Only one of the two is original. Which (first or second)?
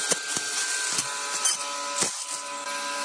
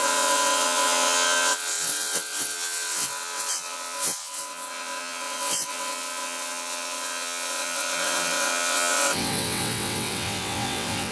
first